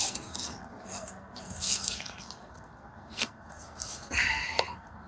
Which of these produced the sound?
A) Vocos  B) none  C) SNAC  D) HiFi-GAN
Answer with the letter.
C